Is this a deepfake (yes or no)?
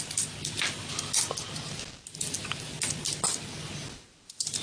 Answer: no